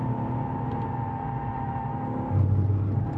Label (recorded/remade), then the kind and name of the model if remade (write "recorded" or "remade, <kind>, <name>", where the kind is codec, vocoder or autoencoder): recorded